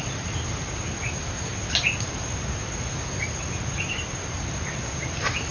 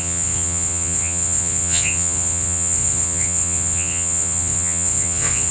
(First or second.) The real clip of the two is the first